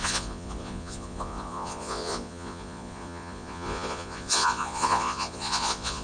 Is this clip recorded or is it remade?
remade